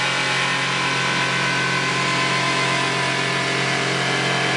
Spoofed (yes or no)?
no